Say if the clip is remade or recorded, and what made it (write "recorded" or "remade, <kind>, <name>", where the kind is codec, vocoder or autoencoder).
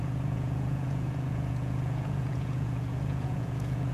remade, vocoder, Vocos